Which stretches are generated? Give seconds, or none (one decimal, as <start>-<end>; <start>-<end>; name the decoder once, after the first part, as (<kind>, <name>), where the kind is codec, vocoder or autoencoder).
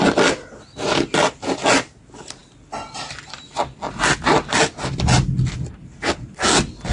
none